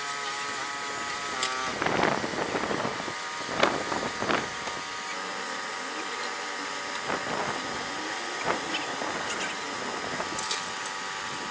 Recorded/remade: recorded